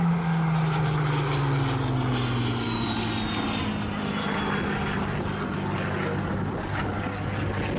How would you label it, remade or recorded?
recorded